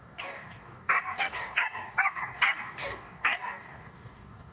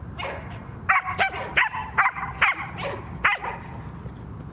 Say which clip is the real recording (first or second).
second